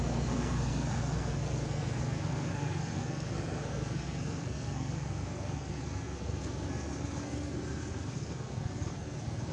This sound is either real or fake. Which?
fake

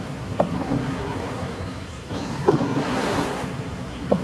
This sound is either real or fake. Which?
fake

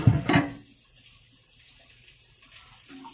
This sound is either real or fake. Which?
fake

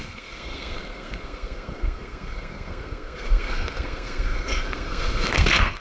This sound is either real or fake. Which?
fake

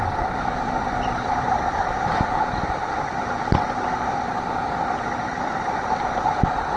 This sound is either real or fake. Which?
fake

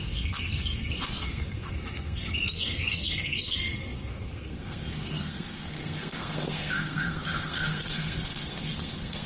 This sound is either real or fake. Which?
fake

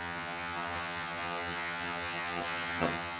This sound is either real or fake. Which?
fake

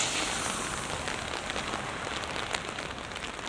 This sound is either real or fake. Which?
real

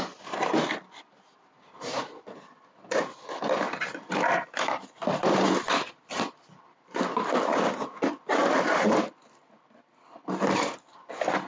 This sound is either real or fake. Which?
fake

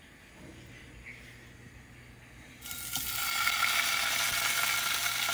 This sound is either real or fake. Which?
real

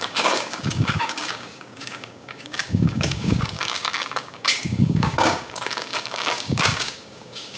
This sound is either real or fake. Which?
fake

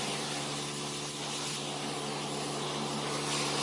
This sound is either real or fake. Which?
real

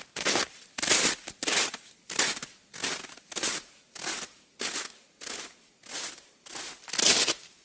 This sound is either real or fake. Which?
real